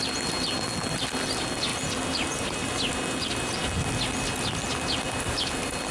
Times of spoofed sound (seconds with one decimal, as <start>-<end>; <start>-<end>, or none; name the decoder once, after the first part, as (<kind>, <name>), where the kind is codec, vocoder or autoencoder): none